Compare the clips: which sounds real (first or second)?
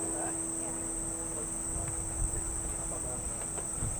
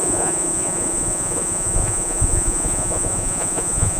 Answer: first